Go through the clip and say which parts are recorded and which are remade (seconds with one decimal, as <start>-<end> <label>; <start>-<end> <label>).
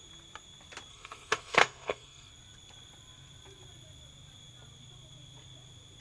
0.0-0.9 recorded; 0.9-2.3 remade; 2.3-6.0 recorded